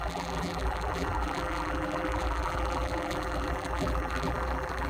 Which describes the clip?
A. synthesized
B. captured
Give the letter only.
A